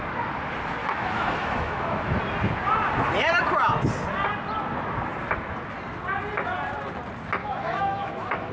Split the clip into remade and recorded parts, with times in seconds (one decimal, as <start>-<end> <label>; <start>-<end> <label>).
0.0-0.8 recorded; 0.8-2.2 remade; 2.2-7.4 recorded; 7.4-8.5 remade

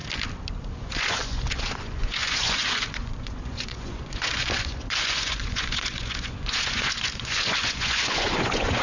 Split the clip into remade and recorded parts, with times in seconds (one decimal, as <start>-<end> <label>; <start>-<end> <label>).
0.0-0.7 recorded; 0.7-8.8 remade